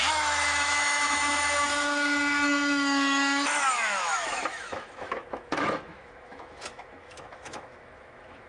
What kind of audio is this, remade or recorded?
remade